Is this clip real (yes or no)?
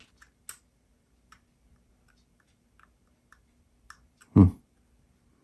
yes